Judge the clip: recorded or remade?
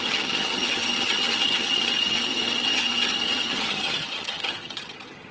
remade